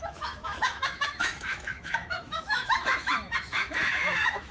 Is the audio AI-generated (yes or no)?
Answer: yes